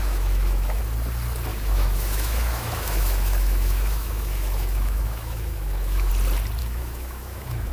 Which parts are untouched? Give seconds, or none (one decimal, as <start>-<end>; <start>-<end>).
0.8-1.5; 6.1-6.6